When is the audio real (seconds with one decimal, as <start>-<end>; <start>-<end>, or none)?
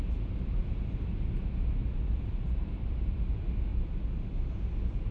0.0-0.6; 1.4-1.8; 3.3-3.7; 4.5-5.1